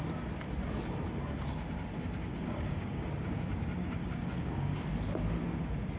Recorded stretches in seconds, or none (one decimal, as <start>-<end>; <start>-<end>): 0.0-2.3; 3.1-3.8; 4.9-6.0